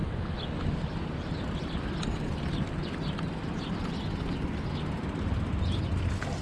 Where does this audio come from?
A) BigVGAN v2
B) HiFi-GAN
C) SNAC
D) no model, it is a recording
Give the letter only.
D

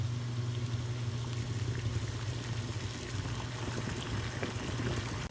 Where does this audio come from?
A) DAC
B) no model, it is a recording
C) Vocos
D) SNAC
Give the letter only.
B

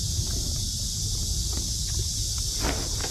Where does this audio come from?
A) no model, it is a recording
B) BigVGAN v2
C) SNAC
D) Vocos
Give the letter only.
A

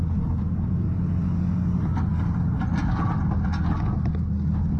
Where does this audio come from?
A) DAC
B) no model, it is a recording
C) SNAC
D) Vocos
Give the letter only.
B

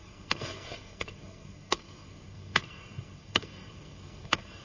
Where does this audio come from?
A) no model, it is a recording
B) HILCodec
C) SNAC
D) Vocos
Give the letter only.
C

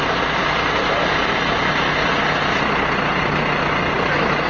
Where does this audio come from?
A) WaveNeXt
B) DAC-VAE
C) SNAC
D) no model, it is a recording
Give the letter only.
D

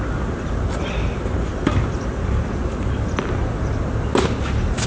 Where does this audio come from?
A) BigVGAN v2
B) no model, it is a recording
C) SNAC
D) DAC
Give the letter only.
B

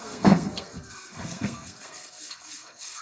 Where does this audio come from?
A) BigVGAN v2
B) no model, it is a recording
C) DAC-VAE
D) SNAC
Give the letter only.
D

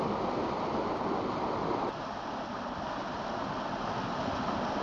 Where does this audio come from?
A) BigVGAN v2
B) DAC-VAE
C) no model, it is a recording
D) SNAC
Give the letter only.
C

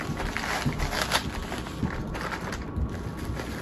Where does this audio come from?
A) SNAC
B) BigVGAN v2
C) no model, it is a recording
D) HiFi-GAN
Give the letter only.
C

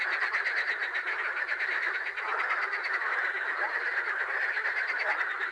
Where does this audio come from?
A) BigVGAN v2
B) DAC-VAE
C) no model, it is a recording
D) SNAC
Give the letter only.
C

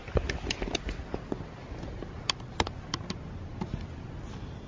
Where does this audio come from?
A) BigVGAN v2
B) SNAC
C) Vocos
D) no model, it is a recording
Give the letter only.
D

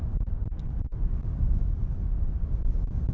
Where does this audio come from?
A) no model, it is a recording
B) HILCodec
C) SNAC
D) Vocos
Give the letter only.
A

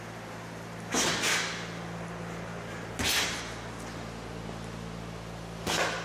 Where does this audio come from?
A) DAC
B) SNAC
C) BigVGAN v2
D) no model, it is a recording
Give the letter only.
D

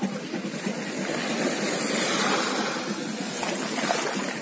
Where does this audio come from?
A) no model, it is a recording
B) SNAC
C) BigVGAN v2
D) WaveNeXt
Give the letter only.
A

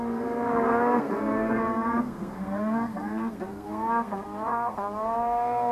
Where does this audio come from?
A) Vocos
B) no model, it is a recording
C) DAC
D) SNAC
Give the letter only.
D